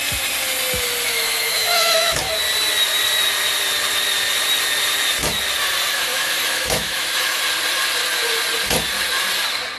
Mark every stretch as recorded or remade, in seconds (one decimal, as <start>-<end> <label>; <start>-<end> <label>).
0.0-1.1 recorded; 1.1-2.2 remade; 2.2-6.1 recorded; 6.1-7.4 remade; 7.4-9.8 recorded